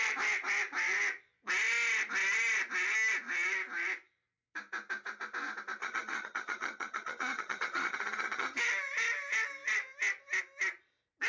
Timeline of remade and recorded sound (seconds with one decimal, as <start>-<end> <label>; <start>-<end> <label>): 0.0-5.8 recorded; 5.8-8.6 remade; 8.6-11.3 recorded

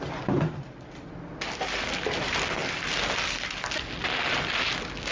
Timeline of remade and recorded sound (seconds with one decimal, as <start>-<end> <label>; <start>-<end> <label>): 0.0-5.1 recorded

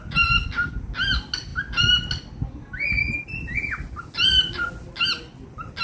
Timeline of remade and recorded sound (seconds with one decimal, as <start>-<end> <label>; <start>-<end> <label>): 0.0-5.8 recorded

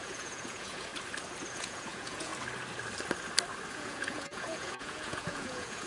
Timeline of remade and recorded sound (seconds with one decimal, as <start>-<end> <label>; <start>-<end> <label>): 0.0-0.9 remade; 0.9-1.5 recorded; 1.5-2.3 remade; 2.3-3.7 recorded; 3.7-5.9 remade

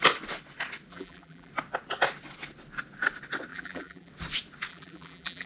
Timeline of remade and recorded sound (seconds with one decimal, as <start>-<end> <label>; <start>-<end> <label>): 0.0-0.9 recorded; 0.9-1.5 remade; 1.5-3.5 recorded; 3.5-4.1 remade; 4.1-4.7 recorded; 4.7-5.5 remade

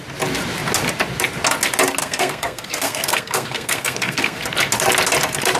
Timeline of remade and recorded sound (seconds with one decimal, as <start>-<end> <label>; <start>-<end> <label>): 0.0-2.0 recorded; 2.0-4.4 remade; 4.4-5.6 recorded